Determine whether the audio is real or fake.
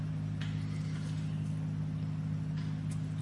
real